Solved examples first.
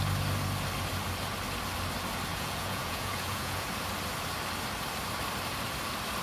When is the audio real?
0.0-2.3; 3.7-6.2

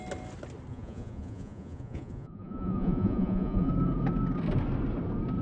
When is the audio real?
0.0-0.7; 3.7-5.4

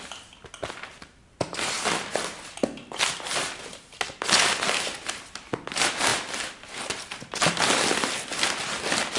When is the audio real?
0.0-9.2

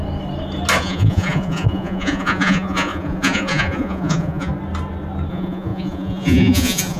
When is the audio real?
0.0-0.8; 4.5-5.3